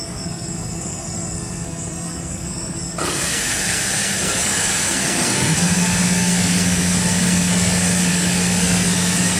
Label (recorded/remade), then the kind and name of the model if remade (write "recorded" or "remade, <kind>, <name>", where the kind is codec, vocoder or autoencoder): remade, codec, SNAC